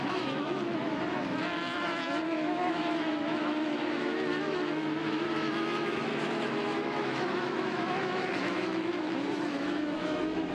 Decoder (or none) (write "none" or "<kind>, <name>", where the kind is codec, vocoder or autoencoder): autoencoder, DAC-VAE